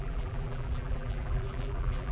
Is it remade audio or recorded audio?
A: remade